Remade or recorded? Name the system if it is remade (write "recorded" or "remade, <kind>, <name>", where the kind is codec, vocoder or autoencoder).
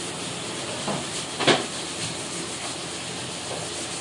recorded